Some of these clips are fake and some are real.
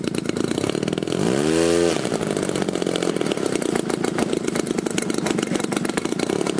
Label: real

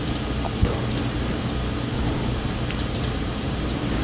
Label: fake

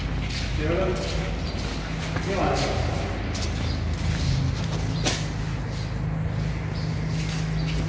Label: real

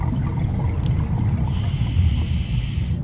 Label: real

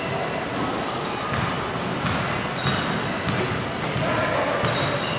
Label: real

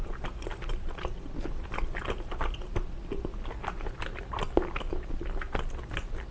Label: real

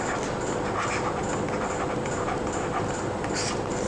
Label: real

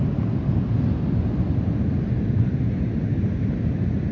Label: real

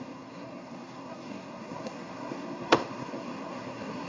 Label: fake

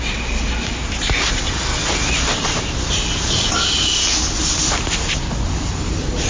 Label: real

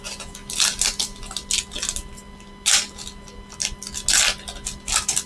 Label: real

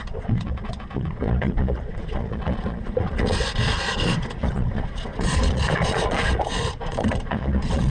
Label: fake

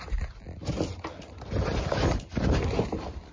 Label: real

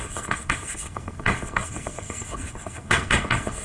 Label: fake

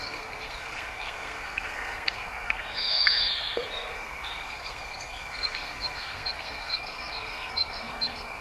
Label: fake